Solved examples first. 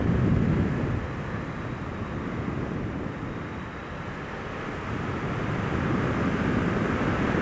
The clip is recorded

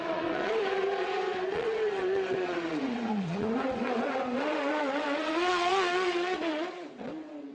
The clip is remade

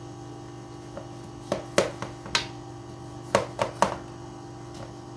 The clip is recorded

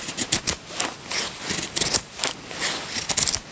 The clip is recorded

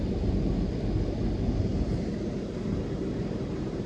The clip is recorded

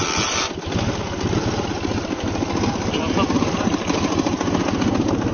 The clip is recorded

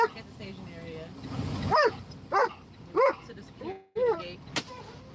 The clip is recorded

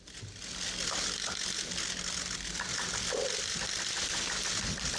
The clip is recorded